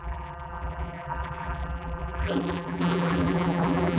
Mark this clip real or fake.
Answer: fake